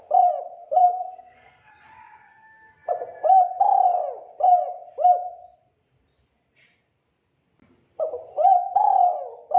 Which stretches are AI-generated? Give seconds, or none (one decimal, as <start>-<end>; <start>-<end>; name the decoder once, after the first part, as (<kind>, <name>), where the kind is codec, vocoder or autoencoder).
0.6-1.7 (codec, SNAC)